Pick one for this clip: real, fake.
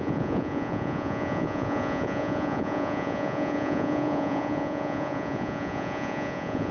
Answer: fake